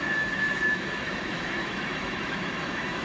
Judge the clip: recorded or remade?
remade